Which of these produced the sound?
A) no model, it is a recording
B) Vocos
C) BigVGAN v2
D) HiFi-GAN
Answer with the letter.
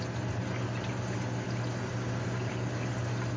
A